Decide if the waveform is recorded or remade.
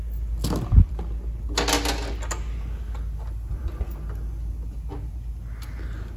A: recorded